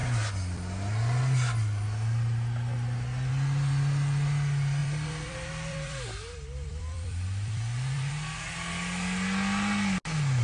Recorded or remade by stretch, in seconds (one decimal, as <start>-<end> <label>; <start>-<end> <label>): 0.0-4.8 recorded; 4.8-8.1 remade; 8.1-10.4 recorded